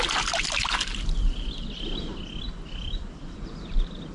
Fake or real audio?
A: real